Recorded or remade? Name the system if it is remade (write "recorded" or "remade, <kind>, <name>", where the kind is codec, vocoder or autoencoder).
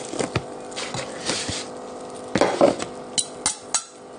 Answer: recorded